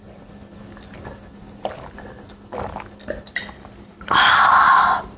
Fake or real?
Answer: real